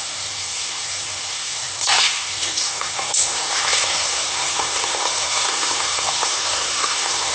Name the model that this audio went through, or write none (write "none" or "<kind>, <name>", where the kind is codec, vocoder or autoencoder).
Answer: codec, SNAC